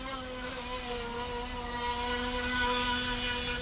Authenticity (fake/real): real